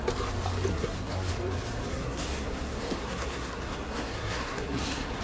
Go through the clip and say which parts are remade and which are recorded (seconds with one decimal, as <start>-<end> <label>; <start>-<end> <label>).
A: 0.0-0.7 recorded; 0.7-1.3 remade; 1.3-1.9 recorded; 1.9-5.2 remade